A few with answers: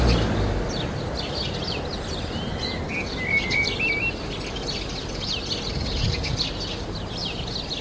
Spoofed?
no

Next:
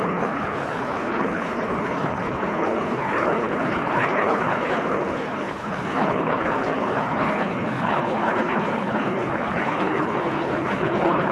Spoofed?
yes